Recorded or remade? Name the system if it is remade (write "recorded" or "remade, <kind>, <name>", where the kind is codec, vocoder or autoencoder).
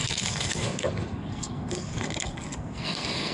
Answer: remade, codec, SNAC